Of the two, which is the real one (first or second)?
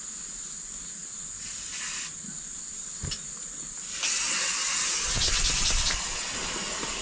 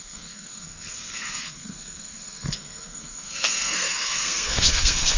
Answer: first